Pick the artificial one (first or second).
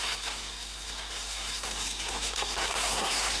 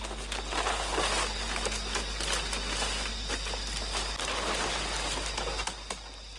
first